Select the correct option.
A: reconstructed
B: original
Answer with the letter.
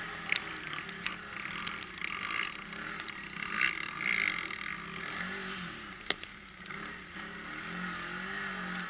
B